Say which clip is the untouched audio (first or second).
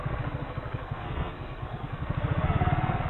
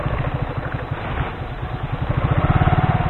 second